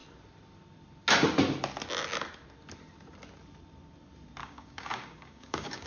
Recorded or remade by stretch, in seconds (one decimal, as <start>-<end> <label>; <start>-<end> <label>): 0.0-4.4 recorded; 4.4-5.9 remade